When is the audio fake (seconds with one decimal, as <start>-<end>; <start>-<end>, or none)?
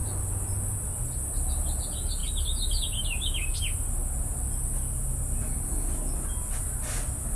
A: none